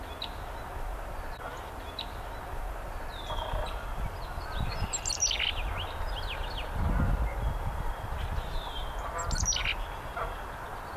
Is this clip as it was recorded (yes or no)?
yes